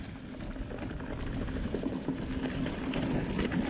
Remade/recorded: recorded